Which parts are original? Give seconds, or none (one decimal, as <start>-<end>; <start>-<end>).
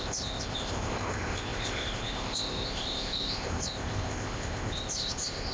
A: none